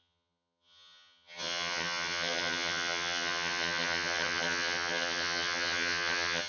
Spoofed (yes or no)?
yes